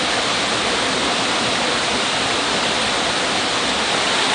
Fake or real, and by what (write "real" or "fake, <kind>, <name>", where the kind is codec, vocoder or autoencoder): real